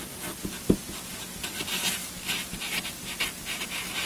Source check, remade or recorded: recorded